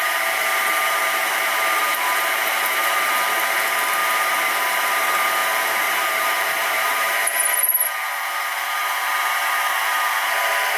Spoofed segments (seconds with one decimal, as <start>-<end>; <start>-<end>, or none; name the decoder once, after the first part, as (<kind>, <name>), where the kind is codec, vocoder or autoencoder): 0.0-10.8 (vocoder, BigVGAN v2)